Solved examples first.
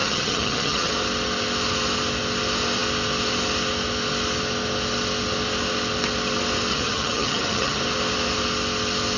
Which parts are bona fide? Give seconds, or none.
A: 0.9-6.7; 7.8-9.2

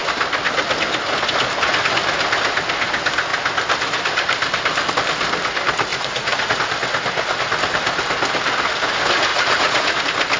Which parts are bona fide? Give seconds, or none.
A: 0.0-5.9; 6.6-9.3; 10.0-10.4

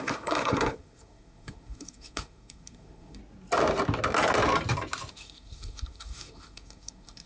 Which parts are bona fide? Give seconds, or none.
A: 3.2-5.1

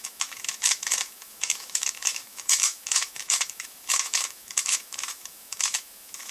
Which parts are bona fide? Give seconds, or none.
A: none

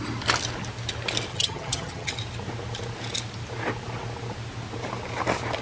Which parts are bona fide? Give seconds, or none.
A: 0.0-1.3; 2.1-5.6

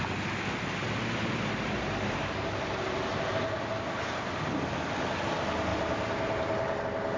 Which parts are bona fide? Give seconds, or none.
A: 0.0-0.8; 3.3-5.7; 6.8-7.2

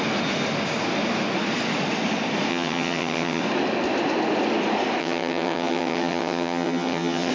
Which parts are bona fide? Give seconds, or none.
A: 0.0-2.5; 3.4-5.0